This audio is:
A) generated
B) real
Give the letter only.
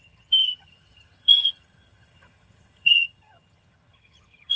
A